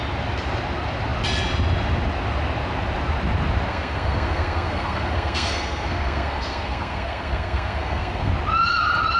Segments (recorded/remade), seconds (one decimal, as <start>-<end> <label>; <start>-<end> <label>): 0.0-3.7 recorded; 3.7-8.3 remade; 8.3-9.2 recorded